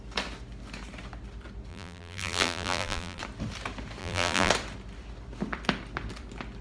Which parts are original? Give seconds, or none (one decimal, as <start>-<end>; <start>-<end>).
0.0-1.7; 3.2-4.0; 4.5-6.6